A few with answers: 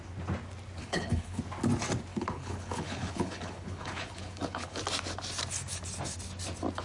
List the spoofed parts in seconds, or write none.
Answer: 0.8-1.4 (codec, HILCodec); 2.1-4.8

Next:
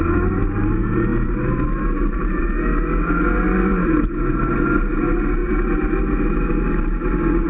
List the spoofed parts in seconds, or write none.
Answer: none

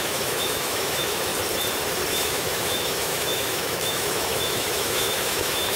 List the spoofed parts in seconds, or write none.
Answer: 0.0-1.3 (autoencoder, DAC-VAE); 2.1-5.8